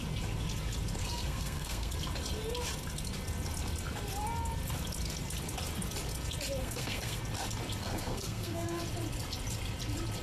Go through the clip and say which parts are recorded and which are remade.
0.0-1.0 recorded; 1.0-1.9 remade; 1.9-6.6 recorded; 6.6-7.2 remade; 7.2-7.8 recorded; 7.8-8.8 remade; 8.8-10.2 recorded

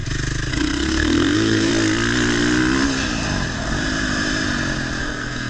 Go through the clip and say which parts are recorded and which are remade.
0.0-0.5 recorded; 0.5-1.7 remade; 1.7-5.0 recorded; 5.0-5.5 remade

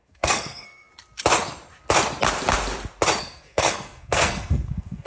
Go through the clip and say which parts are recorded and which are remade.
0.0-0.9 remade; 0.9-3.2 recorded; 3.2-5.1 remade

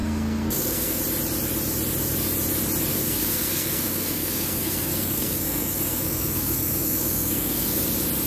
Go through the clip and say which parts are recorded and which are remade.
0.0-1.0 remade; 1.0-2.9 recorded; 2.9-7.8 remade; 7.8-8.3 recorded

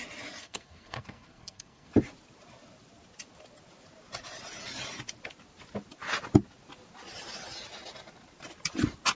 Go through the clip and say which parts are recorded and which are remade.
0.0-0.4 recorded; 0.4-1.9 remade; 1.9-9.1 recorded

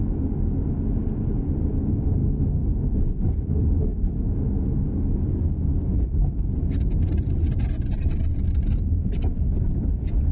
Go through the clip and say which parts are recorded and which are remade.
0.0-10.3 recorded

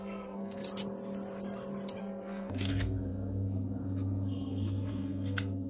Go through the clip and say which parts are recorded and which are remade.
0.0-0.6 remade; 0.6-2.0 recorded; 2.0-5.7 remade

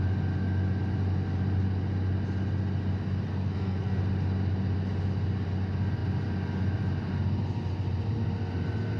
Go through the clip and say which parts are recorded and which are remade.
0.0-3.3 recorded; 3.3-4.0 remade; 4.0-9.0 recorded